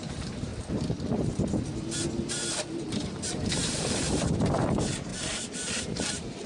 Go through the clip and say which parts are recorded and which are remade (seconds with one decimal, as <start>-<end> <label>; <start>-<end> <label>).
0.0-0.5 remade; 0.5-2.6 recorded; 2.6-5.1 remade; 5.1-5.8 recorded; 5.8-6.5 remade